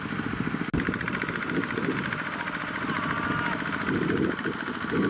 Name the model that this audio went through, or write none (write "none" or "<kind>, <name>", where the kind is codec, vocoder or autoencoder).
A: none